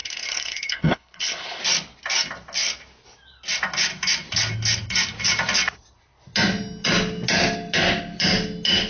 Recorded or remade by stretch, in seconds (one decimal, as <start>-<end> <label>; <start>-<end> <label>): 0.0-1.6 remade; 1.6-8.9 recorded